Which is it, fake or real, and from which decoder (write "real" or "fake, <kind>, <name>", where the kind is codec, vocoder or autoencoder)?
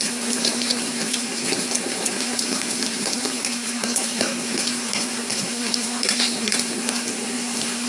fake, codec, SNAC